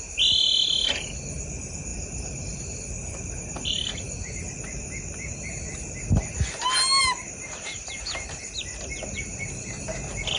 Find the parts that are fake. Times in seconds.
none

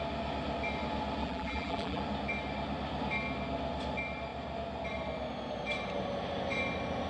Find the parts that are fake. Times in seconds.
1.2-2.0 (vocoder, BigVGAN v2)

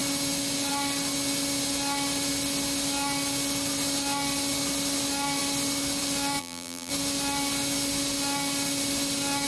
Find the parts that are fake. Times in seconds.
6.4-6.9 (vocoder, BigVGAN v2)

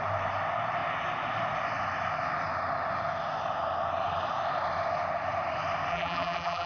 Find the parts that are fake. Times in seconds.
5.9-6.7 (vocoder, BigVGAN v2)

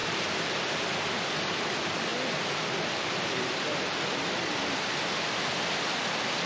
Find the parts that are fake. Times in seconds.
0.0-0.6 (vocoder, BigVGAN v2)

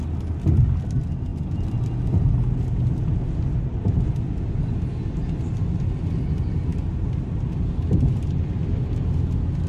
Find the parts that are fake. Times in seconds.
none